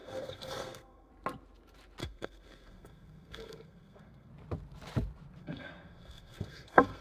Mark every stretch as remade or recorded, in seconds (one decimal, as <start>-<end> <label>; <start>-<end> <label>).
0.0-1.1 remade; 1.1-2.0 recorded; 2.0-4.3 remade; 4.3-5.4 recorded; 5.4-7.0 remade